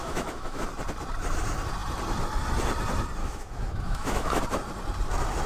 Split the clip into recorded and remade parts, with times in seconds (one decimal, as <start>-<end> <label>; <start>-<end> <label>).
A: 0.0-0.6 remade; 0.6-3.2 recorded; 3.2-4.4 remade; 4.4-5.5 recorded